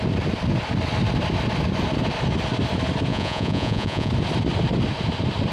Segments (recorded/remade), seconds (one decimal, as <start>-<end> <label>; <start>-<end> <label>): 0.0-3.1 recorded; 3.1-4.1 remade; 4.1-5.5 recorded